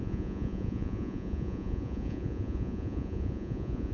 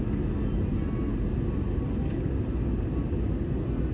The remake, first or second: first